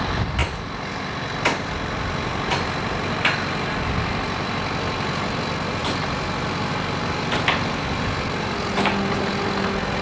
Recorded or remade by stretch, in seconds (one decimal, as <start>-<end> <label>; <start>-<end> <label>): 0.0-10.0 recorded